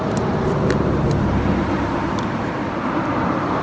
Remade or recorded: recorded